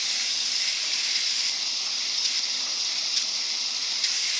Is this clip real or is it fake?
real